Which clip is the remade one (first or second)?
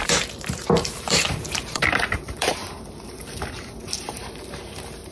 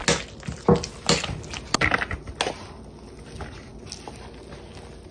first